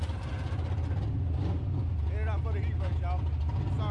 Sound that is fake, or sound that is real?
real